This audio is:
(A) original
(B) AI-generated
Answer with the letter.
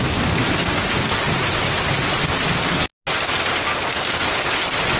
A